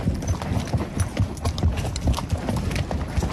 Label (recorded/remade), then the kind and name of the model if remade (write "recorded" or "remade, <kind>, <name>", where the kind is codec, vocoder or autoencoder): recorded